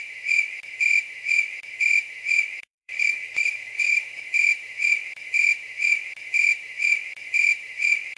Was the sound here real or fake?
fake